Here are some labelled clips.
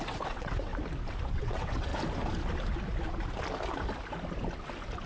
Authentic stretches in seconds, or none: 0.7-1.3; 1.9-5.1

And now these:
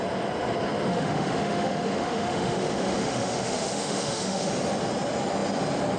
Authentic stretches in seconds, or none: 0.0-0.9; 4.5-6.0

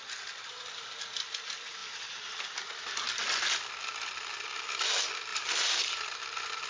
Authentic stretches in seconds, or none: 0.0-5.3; 6.0-6.7

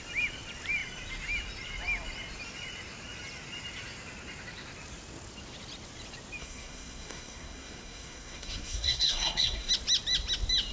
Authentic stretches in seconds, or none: 0.0-6.4; 9.7-10.7

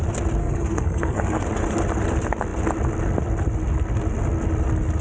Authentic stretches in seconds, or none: 0.0-0.4; 1.4-5.0

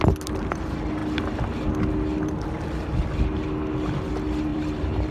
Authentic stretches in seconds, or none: 0.0-4.5